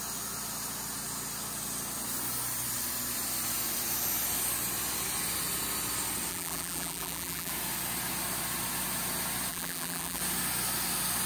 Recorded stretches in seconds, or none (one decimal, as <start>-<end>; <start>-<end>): 0.0-6.3; 7.5-9.5; 10.2-11.3